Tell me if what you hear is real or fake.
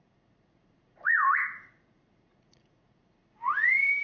fake